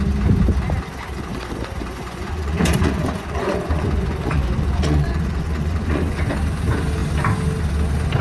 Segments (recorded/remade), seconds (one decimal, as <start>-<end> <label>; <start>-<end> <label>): 0.0-1.3 recorded; 1.3-6.2 remade; 6.2-8.2 recorded